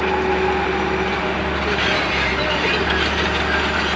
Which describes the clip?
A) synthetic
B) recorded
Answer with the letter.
B